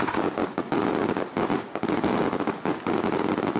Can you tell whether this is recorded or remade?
recorded